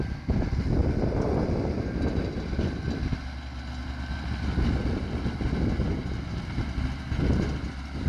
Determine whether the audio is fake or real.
real